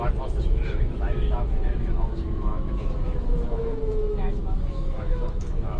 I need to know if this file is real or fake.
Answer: fake